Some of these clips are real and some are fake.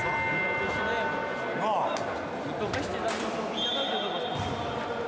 real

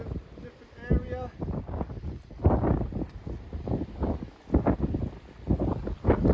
real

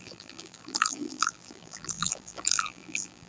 fake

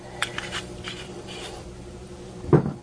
fake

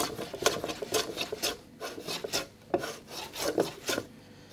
fake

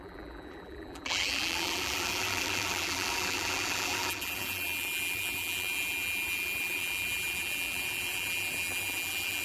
fake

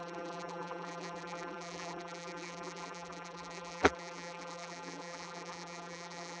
fake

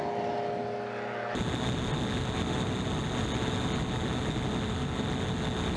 real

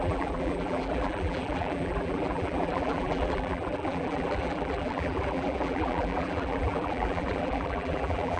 fake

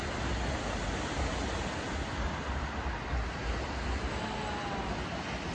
real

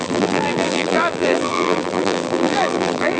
fake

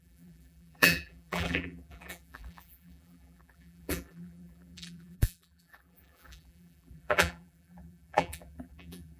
fake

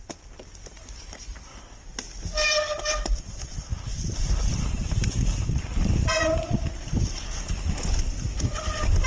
fake